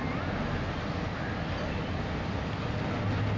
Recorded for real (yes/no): yes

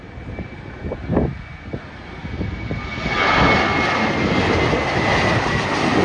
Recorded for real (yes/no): yes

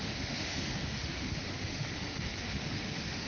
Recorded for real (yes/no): no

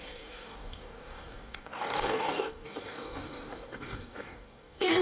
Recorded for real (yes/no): no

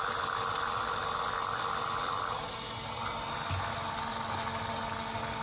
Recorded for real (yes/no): yes